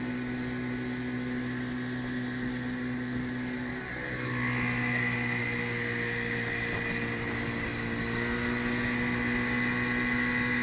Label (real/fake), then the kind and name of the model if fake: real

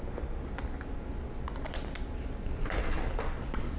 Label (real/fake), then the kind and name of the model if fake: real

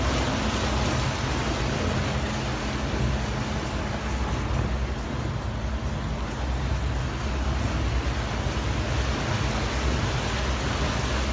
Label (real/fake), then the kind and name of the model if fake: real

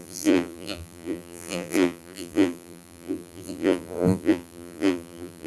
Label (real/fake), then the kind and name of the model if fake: fake, vocoder, BigVGAN v2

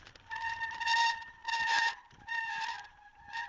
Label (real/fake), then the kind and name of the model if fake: fake, vocoder, BigVGAN v2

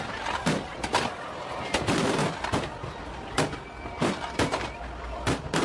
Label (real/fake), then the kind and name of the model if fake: real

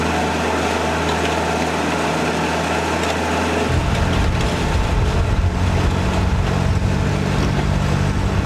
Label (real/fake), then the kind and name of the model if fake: real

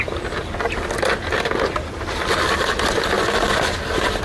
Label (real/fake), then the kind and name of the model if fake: real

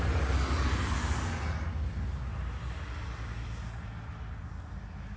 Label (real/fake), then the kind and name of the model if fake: real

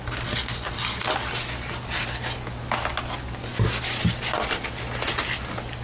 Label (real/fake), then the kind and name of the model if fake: real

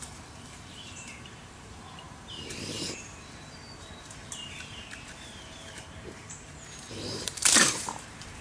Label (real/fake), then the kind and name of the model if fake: fake, vocoder, BigVGAN v2